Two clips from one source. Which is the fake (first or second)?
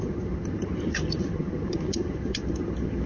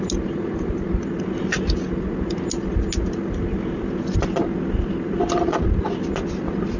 first